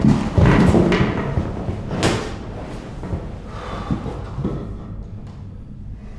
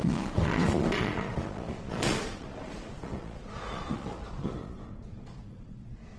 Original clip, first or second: first